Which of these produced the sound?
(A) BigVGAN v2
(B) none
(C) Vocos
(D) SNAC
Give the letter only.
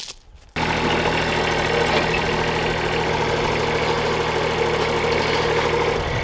B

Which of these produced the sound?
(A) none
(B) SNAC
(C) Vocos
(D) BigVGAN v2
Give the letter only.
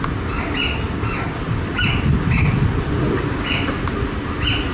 A